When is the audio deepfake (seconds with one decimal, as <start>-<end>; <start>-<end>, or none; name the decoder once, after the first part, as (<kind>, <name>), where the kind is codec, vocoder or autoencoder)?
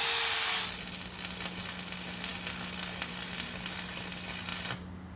none